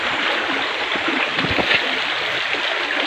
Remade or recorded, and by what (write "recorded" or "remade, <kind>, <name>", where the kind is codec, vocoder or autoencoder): recorded